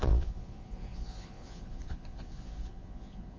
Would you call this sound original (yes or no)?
no